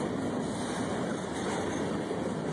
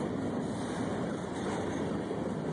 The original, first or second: first